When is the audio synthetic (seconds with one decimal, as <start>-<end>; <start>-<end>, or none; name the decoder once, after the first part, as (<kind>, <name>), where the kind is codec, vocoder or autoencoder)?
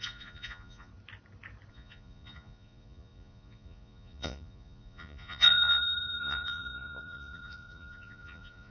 0.0-0.9 (vocoder, Vocos); 1.7-8.7